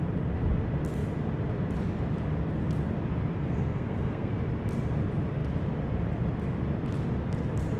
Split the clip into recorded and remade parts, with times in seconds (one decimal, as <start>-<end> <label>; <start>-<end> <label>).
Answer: 0.0-3.4 recorded; 3.4-4.3 remade; 4.3-7.8 recorded